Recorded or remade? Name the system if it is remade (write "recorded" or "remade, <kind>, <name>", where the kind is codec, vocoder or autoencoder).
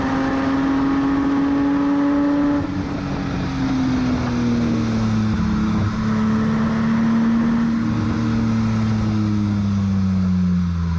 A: recorded